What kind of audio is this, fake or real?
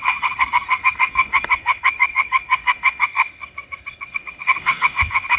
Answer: fake